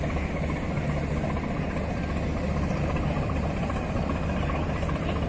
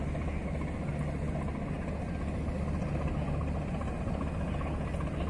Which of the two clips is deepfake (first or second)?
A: first